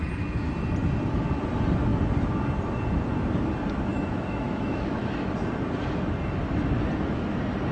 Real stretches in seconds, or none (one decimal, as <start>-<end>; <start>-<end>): 0.0-3.9; 5.3-7.7